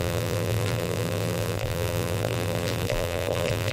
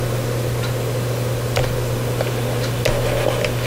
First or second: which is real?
second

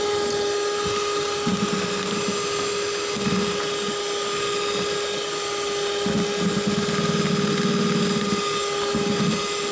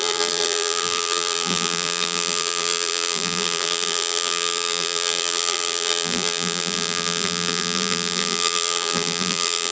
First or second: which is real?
first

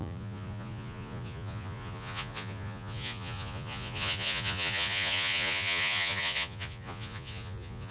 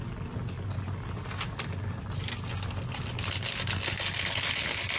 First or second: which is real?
second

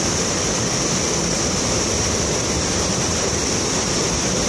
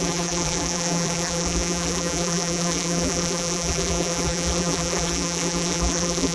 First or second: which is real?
first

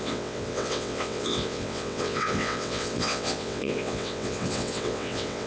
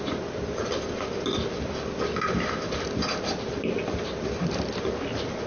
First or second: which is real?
second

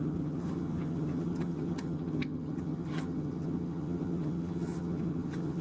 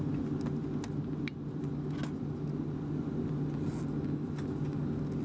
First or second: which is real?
second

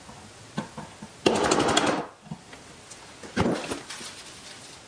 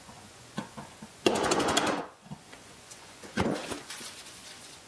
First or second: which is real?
first